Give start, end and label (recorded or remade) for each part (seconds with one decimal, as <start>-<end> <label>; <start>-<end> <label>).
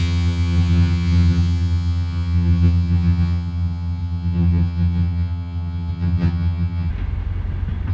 0.0-6.9 remade; 6.9-7.9 recorded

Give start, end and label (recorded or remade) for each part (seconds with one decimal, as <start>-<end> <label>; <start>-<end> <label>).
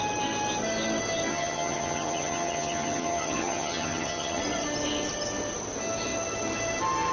0.0-1.3 recorded; 1.3-4.4 remade; 4.4-7.1 recorded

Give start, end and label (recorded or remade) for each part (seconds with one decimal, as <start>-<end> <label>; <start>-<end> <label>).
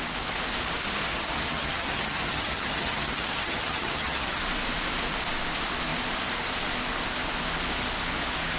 0.0-1.1 recorded; 1.1-4.4 remade; 4.4-8.6 recorded